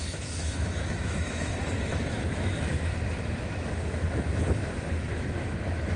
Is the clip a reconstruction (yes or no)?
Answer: yes